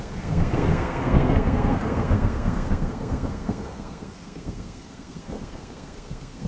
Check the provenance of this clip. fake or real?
fake